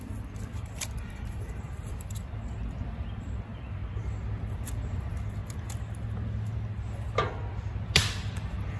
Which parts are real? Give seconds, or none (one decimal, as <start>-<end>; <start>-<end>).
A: 3.8-4.5; 5.4-8.2

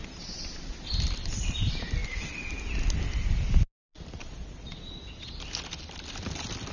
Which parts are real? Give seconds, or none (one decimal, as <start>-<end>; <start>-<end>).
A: 0.0-4.2; 5.4-6.7

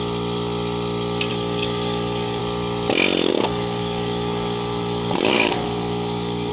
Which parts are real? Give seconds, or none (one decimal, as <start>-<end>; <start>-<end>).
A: 0.0-1.3; 2.4-3.3

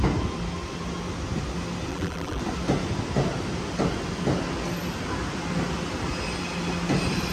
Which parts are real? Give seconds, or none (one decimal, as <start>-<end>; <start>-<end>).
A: 0.0-1.9; 2.4-7.3